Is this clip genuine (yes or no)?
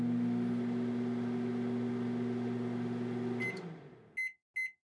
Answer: yes